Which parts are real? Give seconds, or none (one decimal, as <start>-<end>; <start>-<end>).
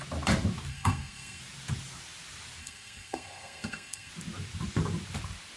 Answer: 0.0-0.7; 1.4-2.6; 4.1-5.6